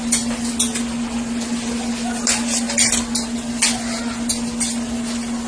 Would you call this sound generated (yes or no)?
no